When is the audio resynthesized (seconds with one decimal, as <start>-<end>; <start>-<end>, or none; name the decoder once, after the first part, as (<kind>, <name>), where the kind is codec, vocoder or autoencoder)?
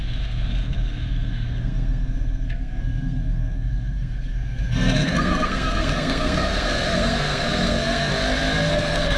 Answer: 0.0-8.1 (codec, SNAC); 8.7-9.2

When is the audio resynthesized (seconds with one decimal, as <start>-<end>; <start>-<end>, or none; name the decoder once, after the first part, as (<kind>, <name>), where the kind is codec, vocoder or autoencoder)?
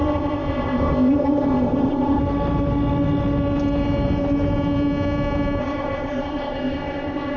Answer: 0.0-2.2 (codec, ZipCodec); 5.6-7.4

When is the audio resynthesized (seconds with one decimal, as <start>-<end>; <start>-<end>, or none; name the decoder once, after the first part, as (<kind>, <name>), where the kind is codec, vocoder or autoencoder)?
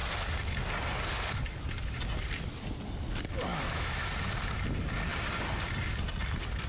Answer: 3.5-4.1 (autoencoder, DAC-VAE)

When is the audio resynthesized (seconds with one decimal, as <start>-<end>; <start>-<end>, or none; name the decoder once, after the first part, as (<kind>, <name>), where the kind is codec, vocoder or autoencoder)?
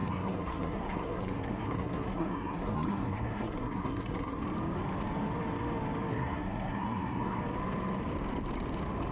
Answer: 0.0-4.4 (codec, SNAC); 6.1-7.4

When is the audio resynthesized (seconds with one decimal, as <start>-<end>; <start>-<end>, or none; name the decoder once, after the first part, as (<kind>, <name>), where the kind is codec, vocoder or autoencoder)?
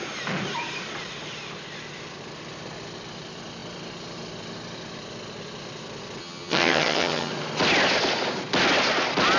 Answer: 6.2-7.3 (vocoder, HiFi-GAN)